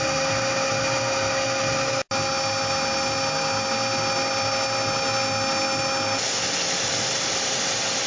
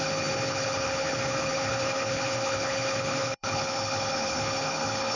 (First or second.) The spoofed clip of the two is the second